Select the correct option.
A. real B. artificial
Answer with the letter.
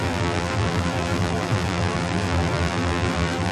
B